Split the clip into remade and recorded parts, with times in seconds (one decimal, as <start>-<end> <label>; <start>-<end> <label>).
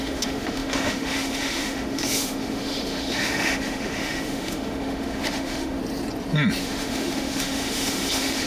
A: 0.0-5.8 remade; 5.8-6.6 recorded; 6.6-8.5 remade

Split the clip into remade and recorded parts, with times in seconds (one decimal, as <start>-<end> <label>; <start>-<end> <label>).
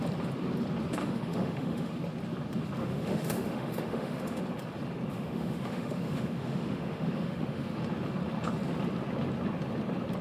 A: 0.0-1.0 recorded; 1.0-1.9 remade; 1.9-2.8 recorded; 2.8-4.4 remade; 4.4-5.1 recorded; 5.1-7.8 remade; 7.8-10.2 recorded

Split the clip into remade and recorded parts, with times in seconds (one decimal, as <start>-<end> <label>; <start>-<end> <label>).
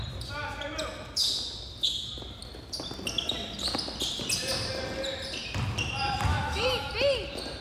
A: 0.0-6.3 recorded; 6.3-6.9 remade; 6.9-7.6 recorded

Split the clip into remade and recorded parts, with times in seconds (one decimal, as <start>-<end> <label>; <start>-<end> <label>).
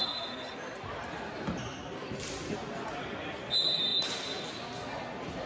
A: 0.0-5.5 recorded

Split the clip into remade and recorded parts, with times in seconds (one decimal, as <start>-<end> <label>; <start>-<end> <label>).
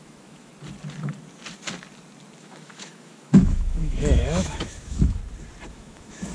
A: 0.0-0.5 remade; 0.5-2.4 recorded; 2.4-5.2 remade; 5.2-5.7 recorded; 5.7-6.3 remade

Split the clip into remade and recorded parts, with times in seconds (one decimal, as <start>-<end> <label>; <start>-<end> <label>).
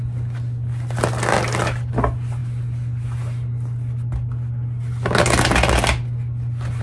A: 0.0-6.8 recorded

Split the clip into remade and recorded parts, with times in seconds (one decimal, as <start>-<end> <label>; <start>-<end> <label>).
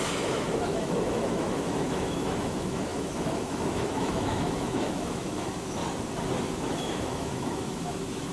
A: 0.0-5.8 remade; 5.8-6.4 recorded; 6.4-8.3 remade